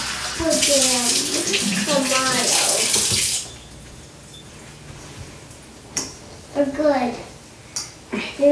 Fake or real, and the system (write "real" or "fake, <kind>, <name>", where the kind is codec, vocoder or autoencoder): real